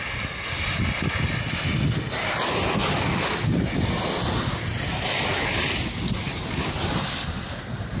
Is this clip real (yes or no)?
yes